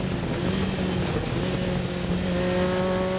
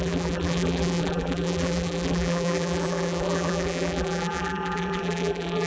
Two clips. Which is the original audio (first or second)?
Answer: first